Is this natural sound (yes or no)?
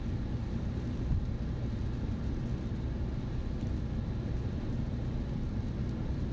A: yes